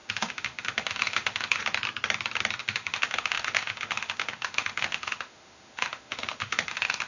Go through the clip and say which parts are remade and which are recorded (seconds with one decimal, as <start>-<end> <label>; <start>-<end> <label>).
0.0-1.6 remade; 1.6-2.6 recorded; 2.6-7.1 remade